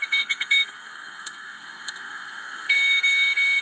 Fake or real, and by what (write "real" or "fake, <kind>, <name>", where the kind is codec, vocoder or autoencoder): fake, codec, SNAC